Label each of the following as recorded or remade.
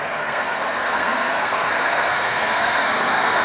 remade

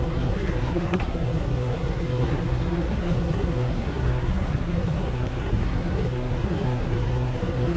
remade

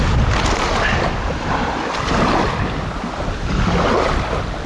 recorded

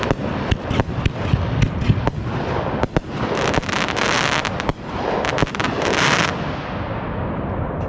recorded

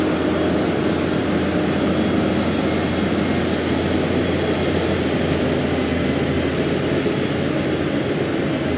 recorded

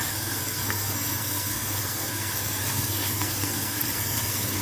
remade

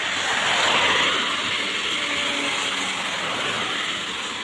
recorded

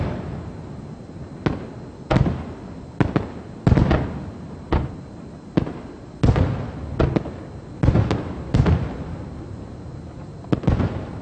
recorded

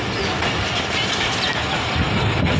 recorded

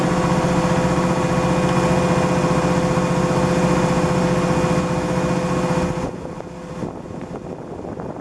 recorded